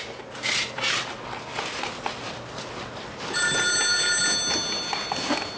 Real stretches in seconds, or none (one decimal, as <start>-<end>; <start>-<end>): 0.0-5.6